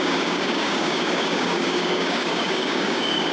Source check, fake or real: fake